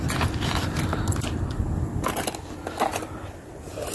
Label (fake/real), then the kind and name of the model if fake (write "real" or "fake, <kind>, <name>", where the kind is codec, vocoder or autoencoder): real